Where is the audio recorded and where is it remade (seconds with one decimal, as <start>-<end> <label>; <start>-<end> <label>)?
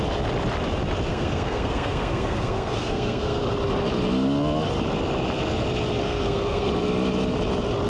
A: 0.0-1.1 recorded; 1.1-3.4 remade; 3.4-6.0 recorded; 6.0-6.7 remade; 6.7-7.9 recorded